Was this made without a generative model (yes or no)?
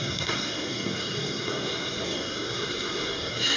no